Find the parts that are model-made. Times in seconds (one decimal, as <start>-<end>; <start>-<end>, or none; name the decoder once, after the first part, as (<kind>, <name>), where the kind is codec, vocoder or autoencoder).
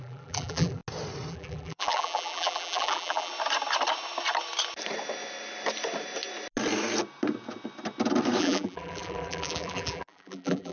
0.0-0.8 (vocoder, BigVGAN v2); 1.3-3.3; 8.4-10.7